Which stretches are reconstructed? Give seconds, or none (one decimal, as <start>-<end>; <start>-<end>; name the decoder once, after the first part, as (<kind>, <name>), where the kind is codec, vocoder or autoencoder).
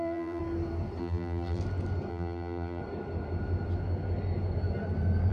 0.0-0.4 (vocoder, BigVGAN v2); 1.0-1.6; 2.1-2.8